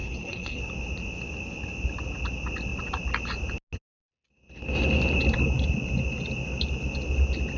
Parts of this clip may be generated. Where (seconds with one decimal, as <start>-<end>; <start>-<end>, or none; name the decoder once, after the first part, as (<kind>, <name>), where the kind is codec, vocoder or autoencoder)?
0.0-0.6 (codec, HILCodec)